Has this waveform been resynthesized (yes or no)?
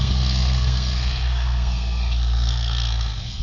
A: yes